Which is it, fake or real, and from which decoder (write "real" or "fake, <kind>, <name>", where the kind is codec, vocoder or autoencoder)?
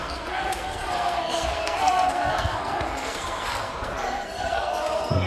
fake, codec, SNAC